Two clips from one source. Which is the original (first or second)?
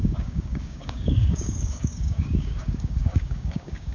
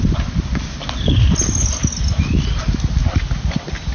second